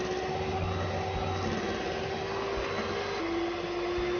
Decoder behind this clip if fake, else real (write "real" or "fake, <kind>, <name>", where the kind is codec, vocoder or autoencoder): real